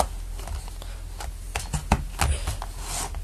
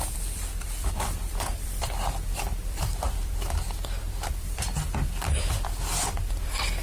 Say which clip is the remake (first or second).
second